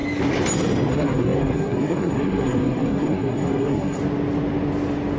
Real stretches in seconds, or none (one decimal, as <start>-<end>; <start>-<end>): 0.0-0.9; 4.0-5.2